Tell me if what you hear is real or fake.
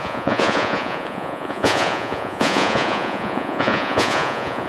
fake